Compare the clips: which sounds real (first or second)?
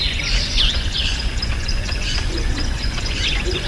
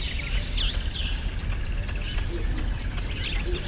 second